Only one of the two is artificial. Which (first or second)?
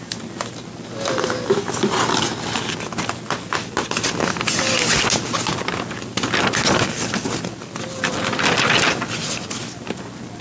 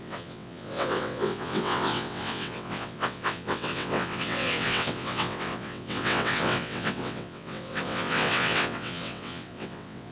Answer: second